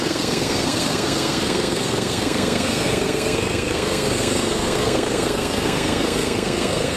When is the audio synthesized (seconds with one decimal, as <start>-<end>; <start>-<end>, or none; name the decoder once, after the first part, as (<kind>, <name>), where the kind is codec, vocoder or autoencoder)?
0.0-7.0 (codec, SNAC)